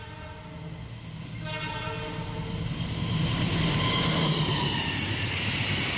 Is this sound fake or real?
real